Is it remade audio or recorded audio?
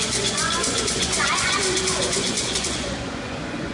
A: remade